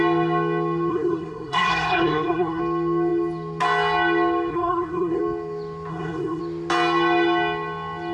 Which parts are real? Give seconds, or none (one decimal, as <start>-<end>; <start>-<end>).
0.0-0.9; 2.6-4.5; 5.2-5.9; 6.4-8.1